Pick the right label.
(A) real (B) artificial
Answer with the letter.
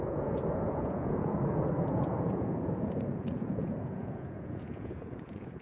B